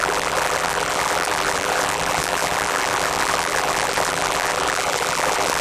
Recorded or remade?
remade